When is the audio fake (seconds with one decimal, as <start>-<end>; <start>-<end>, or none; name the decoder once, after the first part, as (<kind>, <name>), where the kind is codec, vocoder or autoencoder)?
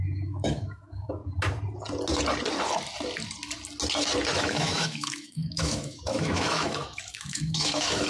0.0-1.2 (autoencoder, DAC-VAE); 4.3-8.1